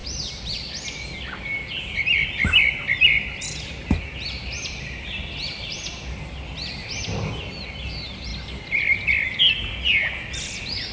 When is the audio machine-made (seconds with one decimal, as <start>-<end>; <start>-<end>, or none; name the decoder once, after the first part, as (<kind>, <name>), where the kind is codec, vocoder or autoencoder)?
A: none